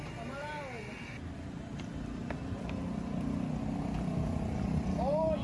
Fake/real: real